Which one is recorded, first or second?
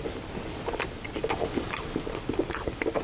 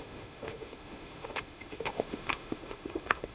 first